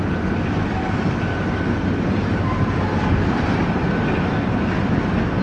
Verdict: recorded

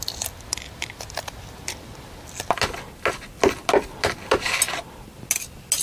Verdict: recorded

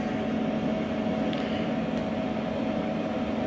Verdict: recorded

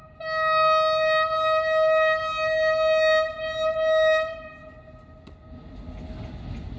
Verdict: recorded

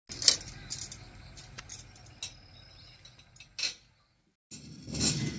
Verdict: recorded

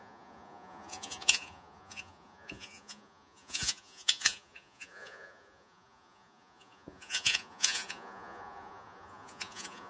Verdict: remade